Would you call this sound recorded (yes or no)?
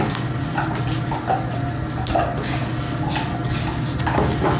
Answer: yes